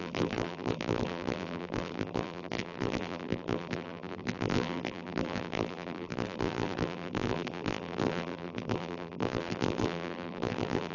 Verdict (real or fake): fake